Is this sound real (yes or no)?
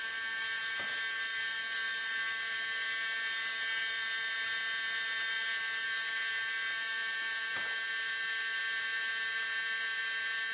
yes